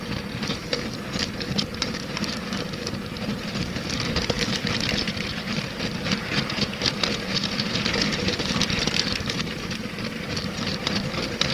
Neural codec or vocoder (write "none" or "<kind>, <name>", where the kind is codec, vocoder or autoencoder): vocoder, BigVGAN v2